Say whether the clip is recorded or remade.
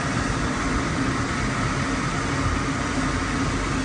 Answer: recorded